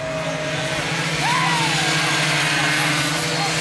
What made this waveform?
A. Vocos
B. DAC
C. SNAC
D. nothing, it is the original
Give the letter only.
D